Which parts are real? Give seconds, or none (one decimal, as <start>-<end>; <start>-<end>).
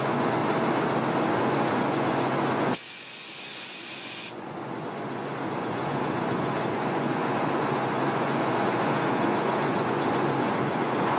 0.4-1.3